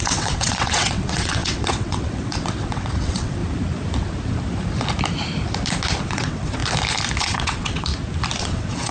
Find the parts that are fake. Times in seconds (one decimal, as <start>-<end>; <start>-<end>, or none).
0.0-3.4; 6.0-6.6; 7.2-7.9; 8.4-8.9